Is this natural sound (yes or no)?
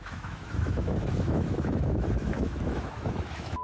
no